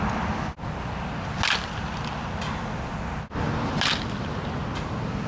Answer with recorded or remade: recorded